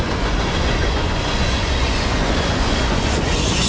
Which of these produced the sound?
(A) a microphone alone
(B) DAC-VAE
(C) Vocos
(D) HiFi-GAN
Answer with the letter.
C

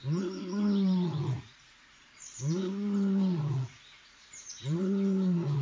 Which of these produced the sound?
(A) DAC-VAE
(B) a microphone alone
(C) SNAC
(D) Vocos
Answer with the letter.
D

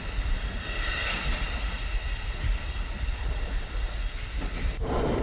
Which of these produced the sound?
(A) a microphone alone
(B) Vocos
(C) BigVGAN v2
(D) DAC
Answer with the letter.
A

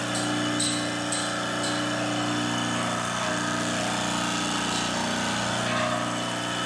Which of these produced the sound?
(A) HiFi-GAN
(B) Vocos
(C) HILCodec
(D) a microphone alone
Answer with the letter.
D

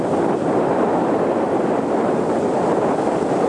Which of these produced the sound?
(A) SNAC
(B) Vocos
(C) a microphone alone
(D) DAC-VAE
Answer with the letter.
C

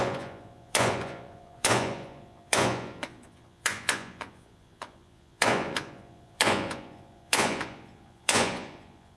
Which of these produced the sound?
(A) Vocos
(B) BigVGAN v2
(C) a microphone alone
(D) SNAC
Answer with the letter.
A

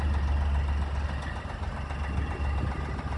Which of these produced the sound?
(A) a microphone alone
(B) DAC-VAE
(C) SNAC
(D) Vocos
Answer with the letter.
A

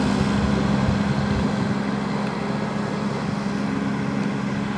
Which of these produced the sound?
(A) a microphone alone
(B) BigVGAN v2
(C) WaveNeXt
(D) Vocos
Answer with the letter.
A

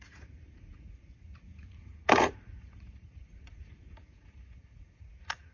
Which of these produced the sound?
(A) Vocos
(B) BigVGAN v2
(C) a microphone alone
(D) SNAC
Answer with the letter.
A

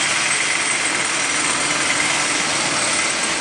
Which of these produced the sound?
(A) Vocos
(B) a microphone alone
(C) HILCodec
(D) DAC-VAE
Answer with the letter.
B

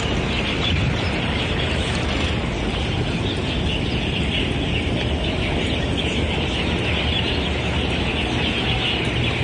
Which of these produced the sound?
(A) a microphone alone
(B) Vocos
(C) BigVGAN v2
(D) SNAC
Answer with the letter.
A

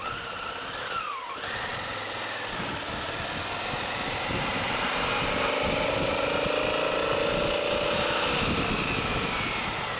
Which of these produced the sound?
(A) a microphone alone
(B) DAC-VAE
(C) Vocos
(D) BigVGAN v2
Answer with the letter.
A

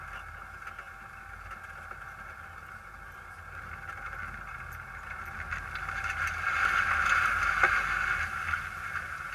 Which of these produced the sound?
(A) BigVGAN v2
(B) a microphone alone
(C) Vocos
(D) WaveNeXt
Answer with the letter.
B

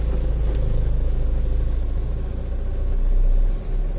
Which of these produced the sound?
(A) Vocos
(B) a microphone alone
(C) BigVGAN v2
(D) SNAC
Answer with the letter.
B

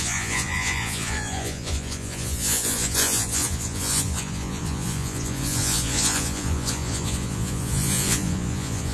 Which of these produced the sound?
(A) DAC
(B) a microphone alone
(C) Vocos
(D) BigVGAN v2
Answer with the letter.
C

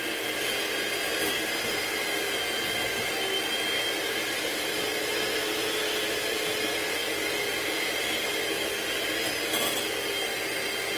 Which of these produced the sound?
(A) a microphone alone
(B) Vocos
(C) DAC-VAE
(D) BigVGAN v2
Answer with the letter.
A